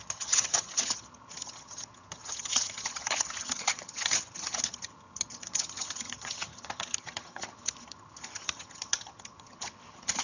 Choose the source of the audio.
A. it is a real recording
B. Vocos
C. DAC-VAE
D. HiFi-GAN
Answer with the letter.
D